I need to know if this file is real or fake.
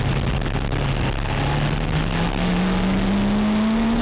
real